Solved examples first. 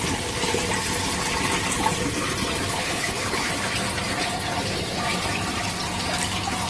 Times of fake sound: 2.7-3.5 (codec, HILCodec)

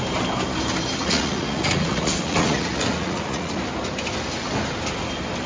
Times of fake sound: 1.0-3.6 (vocoder, Vocos)

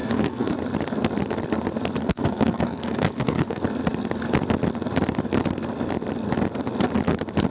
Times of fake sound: 0.0-0.5 (codec, SNAC); 2.0-3.6

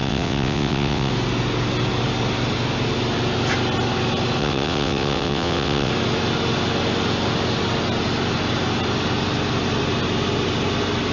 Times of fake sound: 0.0-1.1 (vocoder, WaveNeXt); 4.4-5.9

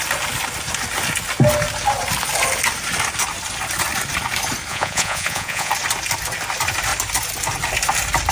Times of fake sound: 4.7-5.7 (vocoder, Vocos)

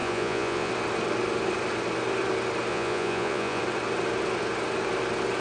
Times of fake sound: 0.0-0.7 (vocoder, Vocos); 2.7-3.6